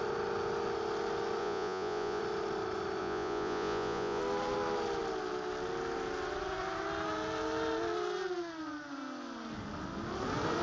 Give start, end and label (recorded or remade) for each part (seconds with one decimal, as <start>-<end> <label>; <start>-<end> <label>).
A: 0.0-1.4 recorded; 1.4-2.2 remade; 2.2-3.0 recorded; 3.0-4.2 remade; 4.2-10.6 recorded